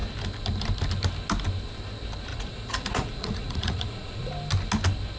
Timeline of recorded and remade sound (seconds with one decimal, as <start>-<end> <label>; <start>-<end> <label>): 0.0-2.3 recorded; 2.3-4.3 remade; 4.3-5.2 recorded